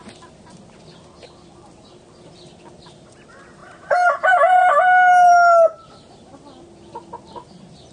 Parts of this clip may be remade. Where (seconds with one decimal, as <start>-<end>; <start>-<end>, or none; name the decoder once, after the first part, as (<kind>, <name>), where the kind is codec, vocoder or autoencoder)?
3.6-6.2 (vocoder, BigVGAN v2)